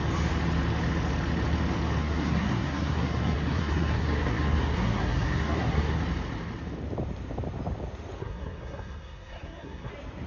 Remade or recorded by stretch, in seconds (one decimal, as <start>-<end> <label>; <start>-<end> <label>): 0.0-2.0 recorded; 2.0-6.0 remade; 6.0-8.2 recorded; 8.2-9.9 remade; 9.9-10.3 recorded